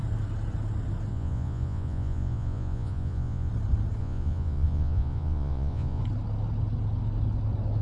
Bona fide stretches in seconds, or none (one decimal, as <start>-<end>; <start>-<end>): 0.0-1.1; 3.5-4.0; 6.0-7.8